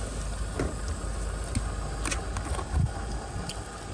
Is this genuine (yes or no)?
yes